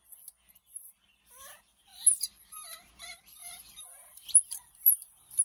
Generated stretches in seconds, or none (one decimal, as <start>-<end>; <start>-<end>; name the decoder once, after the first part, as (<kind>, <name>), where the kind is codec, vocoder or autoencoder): 1.9-2.9 (vocoder, BigVGAN v2); 3.4-5.4